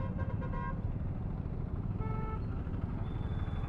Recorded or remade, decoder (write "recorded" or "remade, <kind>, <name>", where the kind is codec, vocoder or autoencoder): recorded